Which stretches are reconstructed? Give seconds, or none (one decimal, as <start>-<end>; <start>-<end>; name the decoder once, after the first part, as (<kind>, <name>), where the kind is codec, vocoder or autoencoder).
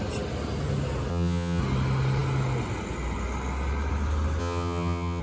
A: 1.1-1.6 (vocoder, HiFi-GAN); 4.4-5.2